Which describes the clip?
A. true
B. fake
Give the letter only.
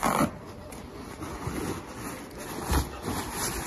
A